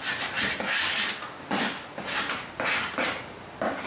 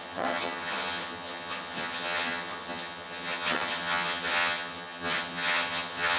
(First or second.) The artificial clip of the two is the second